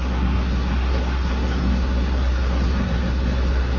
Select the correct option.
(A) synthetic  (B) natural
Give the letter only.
A